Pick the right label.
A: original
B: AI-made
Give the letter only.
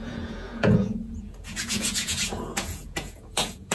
B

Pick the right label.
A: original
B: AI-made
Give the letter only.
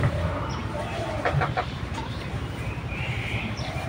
B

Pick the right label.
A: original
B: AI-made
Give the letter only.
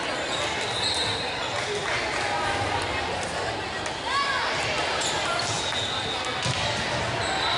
A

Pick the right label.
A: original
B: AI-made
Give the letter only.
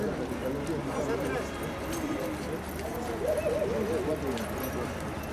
A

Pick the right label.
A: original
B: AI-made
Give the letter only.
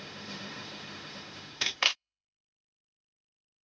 B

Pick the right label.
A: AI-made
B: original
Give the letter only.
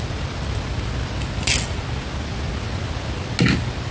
B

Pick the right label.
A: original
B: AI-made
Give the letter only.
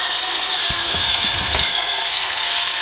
B